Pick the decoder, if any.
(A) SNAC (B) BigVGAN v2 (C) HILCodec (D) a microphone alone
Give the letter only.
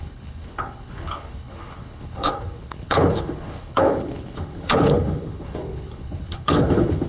C